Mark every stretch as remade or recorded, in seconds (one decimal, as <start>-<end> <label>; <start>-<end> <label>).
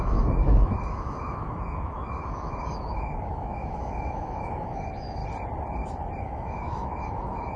0.0-5.2 remade; 5.2-6.2 recorded; 6.2-7.6 remade